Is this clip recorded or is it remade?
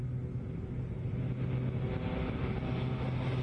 recorded